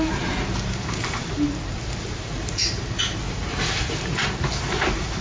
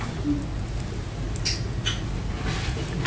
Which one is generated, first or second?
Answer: first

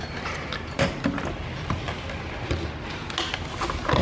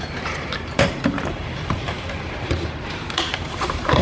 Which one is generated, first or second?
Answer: second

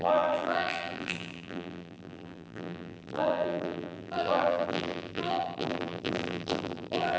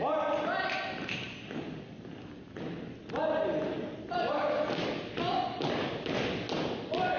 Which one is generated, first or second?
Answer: first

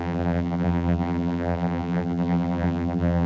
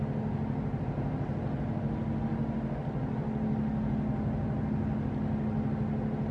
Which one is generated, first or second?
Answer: first